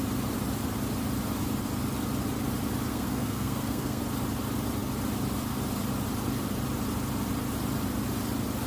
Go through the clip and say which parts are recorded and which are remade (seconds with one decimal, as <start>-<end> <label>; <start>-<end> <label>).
0.0-2.9 recorded; 2.9-4.0 remade; 4.0-8.7 recorded

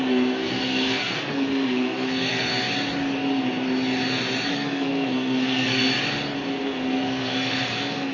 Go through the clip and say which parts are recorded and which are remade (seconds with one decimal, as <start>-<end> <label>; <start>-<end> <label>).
0.0-2.5 remade; 2.5-4.5 recorded; 4.5-5.8 remade; 5.8-6.6 recorded; 6.6-8.1 remade

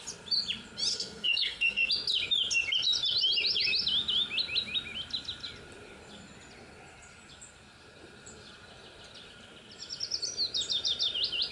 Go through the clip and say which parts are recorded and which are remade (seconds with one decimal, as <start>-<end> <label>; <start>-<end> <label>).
0.0-0.9 recorded; 0.9-1.9 remade; 1.9-11.5 recorded

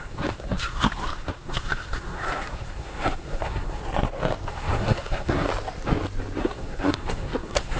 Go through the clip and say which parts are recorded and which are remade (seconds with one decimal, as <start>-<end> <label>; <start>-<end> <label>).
0.0-3.8 remade; 3.8-4.5 recorded; 4.5-5.5 remade; 5.5-6.4 recorded; 6.4-7.8 remade

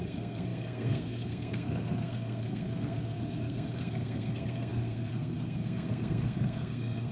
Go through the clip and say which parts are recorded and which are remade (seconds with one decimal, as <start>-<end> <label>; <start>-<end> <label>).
0.0-7.1 remade

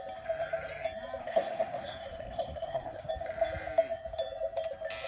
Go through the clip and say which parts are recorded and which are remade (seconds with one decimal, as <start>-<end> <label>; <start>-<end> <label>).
0.0-1.2 recorded; 1.2-3.1 remade; 3.1-5.1 recorded

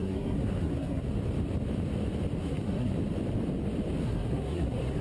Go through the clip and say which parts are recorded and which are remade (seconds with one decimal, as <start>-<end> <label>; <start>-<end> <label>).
0.0-1.0 remade; 1.0-2.4 recorded; 2.4-2.9 remade; 2.9-4.0 recorded; 4.0-5.0 remade

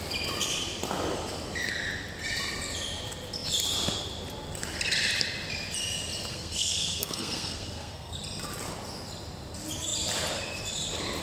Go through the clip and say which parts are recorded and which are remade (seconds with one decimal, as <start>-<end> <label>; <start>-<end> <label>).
0.0-6.3 recorded; 6.3-8.2 remade; 8.2-11.2 recorded